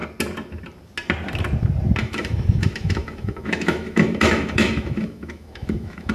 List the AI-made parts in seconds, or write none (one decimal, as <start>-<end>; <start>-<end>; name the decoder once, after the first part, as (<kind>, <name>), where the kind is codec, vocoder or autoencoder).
2.0-6.1 (autoencoder, DAC-VAE)